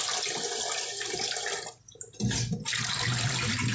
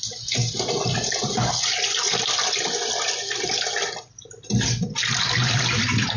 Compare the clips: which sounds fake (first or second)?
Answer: second